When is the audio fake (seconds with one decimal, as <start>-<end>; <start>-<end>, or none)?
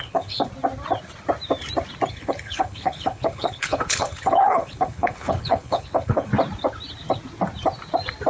0.0-0.5; 2.1-6.3